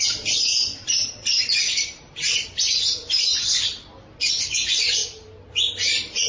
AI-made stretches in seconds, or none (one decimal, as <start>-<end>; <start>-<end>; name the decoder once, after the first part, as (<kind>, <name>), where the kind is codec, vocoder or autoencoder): 0.0-6.3 (vocoder, BigVGAN v2)

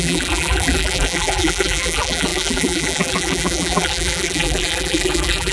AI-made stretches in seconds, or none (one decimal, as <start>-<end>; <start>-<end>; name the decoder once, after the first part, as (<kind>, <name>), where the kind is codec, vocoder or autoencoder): 0.0-5.5 (vocoder, BigVGAN v2)

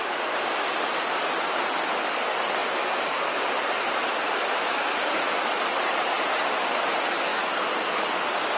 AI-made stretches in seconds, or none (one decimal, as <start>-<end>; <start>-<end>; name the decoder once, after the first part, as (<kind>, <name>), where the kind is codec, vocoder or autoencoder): 2.6-6.2 (vocoder, BigVGAN v2)

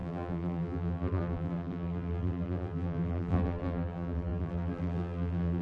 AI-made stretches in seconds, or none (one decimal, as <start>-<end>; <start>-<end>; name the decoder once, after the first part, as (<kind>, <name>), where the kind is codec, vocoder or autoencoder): 0.0-5.6 (vocoder, BigVGAN v2)

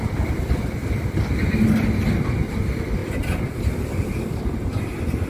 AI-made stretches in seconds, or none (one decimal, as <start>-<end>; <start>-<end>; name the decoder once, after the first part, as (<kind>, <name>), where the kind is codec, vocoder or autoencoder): 0.8-1.5 (vocoder, BigVGAN v2); 3.0-4.1

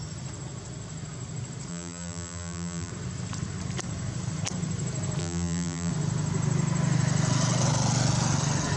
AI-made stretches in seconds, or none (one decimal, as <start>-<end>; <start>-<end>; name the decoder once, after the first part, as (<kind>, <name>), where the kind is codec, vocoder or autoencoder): 1.7-2.9 (vocoder, BigVGAN v2); 5.2-5.9